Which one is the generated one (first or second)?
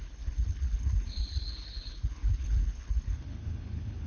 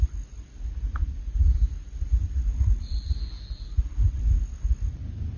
first